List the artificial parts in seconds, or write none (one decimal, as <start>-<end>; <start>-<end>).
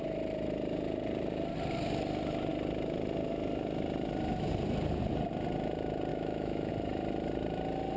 6.1-6.7